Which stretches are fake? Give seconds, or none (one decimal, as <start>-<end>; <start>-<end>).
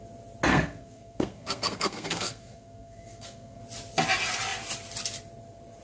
0.5-3.6